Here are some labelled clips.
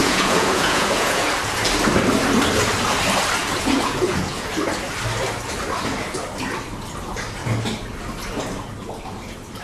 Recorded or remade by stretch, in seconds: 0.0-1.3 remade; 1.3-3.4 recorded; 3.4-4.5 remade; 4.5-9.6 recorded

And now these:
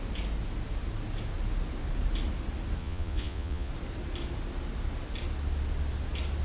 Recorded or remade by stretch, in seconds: 0.0-2.8 recorded; 2.8-3.7 remade; 3.7-6.4 recorded

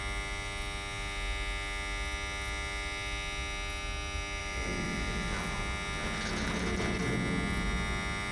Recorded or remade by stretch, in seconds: 0.0-4.4 recorded; 4.4-5.6 remade; 5.6-8.3 recorded

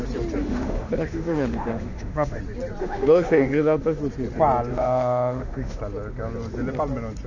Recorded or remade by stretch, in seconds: 0.0-0.4 recorded; 0.4-2.4 remade; 2.4-2.8 recorded; 2.8-4.0 remade; 4.0-4.7 recorded; 4.7-5.8 remade; 5.8-7.3 recorded

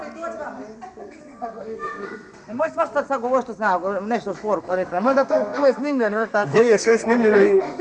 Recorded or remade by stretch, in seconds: 0.0-1.0 recorded; 1.0-2.9 remade; 2.9-4.6 recorded; 4.6-7.8 remade